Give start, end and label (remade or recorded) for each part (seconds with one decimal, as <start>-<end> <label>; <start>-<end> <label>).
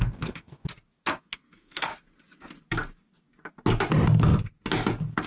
0.0-0.6 remade; 0.6-1.2 recorded; 1.2-1.9 remade; 1.9-5.3 recorded